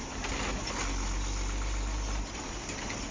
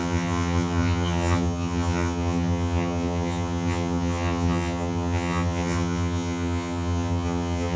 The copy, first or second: second